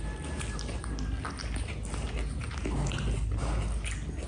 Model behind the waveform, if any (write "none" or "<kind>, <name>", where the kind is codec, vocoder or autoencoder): none